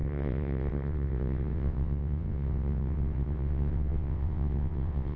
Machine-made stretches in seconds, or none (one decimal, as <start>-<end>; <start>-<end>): 0.0-5.2